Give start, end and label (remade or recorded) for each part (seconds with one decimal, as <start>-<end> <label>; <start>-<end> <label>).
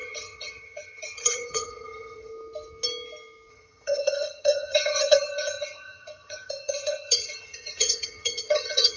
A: 0.0-2.3 remade; 2.3-3.5 recorded; 3.5-9.0 remade